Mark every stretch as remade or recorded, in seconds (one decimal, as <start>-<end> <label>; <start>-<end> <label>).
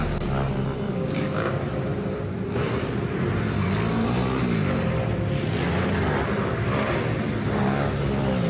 0.0-0.9 recorded; 0.9-1.5 remade; 1.5-8.5 recorded